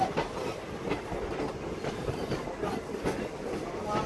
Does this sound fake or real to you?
real